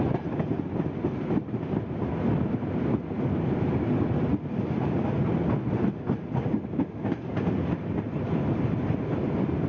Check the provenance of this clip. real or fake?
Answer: real